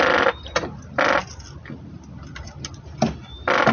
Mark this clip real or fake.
real